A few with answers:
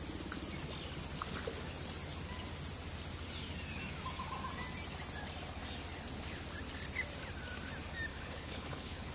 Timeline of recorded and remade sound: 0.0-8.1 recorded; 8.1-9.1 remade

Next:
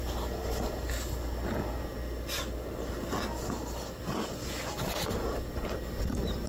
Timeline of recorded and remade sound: 0.0-6.5 recorded

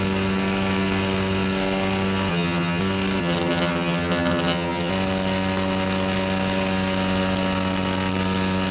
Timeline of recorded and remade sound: 0.0-2.3 recorded; 2.3-2.8 remade; 2.8-3.2 recorded; 3.2-4.9 remade; 4.9-8.7 recorded

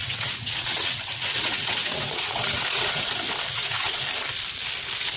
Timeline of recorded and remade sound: 0.0-3.1 remade; 3.1-3.5 recorded; 3.5-4.0 remade; 4.0-5.2 recorded

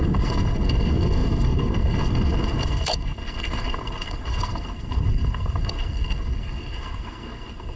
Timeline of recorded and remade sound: 0.0-7.8 remade

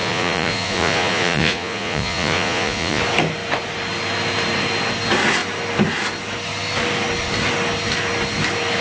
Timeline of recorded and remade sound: 0.0-3.0 remade; 3.0-8.8 recorded